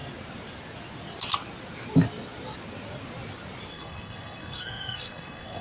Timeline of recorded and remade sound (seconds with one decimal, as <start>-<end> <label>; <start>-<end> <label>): 0.0-3.7 recorded; 3.7-5.6 remade